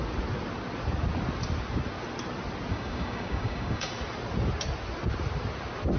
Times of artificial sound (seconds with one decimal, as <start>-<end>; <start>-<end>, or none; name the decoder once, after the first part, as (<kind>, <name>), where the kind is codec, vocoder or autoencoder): 2.7-3.9 (codec, DAC)